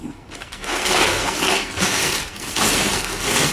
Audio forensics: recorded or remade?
remade